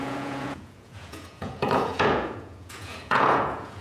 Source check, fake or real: fake